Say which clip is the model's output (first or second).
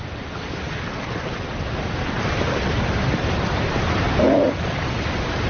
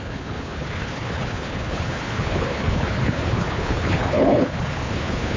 second